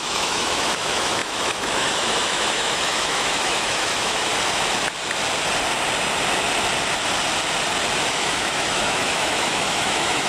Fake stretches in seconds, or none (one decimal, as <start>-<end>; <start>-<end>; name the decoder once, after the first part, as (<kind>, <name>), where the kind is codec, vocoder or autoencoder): 0.0-4.3 (autoencoder, DAC-VAE); 8.1-10.3